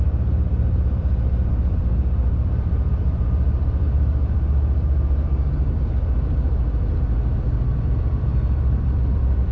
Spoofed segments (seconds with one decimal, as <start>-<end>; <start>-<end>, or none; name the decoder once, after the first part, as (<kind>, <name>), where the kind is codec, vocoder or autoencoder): 0.0-9.5 (vocoder, BigVGAN v2)